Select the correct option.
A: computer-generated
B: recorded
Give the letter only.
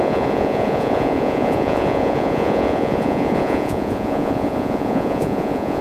A